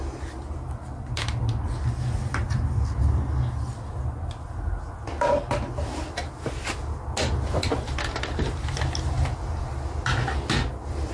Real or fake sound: real